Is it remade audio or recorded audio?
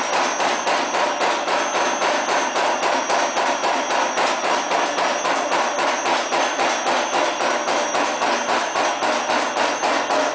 recorded